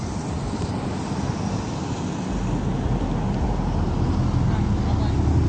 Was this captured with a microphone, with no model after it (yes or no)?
yes